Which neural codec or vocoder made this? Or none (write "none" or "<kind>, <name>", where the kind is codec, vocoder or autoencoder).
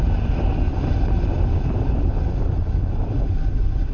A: none